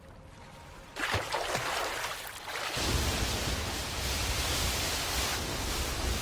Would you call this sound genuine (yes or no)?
yes